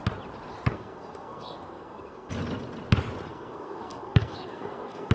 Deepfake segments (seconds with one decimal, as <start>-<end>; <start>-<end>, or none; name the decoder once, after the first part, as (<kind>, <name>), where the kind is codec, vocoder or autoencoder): 0.7-2.3 (codec, SNAC); 3.3-5.1